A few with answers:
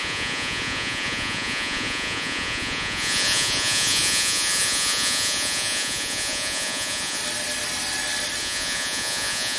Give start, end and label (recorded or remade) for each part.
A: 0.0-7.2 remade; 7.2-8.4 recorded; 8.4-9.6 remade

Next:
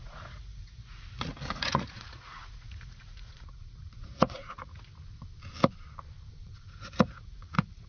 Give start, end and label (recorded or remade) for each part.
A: 0.0-4.9 remade; 4.9-6.7 recorded; 6.7-7.9 remade

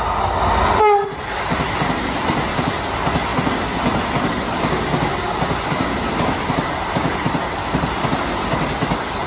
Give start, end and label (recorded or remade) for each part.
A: 0.0-9.3 recorded

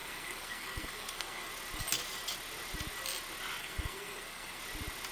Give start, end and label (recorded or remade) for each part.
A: 0.0-1.5 remade; 1.5-3.6 recorded; 3.6-4.6 remade; 4.6-5.1 recorded

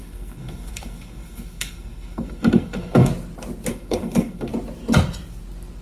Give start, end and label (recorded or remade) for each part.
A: 0.0-3.1 remade; 3.1-3.7 recorded; 3.7-4.5 remade; 4.5-5.8 recorded